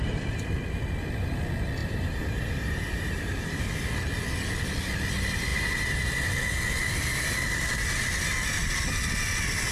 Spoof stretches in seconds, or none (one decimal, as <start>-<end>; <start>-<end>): 1.8-3.6; 5.5-6.1